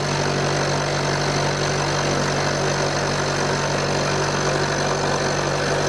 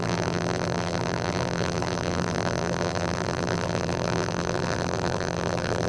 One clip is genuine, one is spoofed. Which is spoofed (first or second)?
second